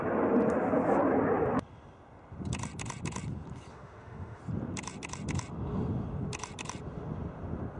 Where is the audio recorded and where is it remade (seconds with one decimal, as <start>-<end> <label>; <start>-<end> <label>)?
0.0-3.7 recorded; 3.7-4.4 remade; 4.4-7.8 recorded